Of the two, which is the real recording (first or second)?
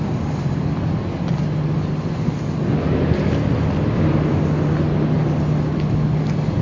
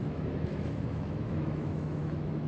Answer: first